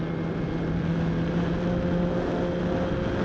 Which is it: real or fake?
real